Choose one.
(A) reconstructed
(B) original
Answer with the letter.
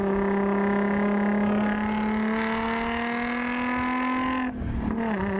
B